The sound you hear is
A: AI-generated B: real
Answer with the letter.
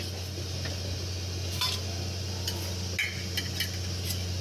B